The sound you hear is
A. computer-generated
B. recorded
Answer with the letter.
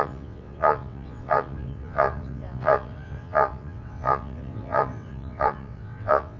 A